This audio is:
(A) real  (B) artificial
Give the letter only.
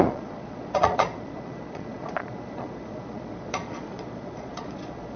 B